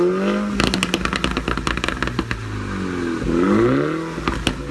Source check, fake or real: real